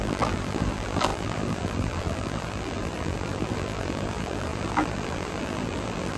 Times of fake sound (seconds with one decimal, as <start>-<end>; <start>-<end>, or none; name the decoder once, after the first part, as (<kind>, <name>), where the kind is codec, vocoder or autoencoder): 0.0-6.2 (vocoder, BigVGAN v2)